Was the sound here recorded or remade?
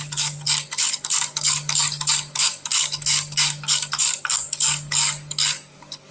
remade